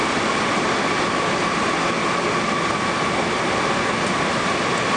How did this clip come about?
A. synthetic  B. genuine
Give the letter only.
B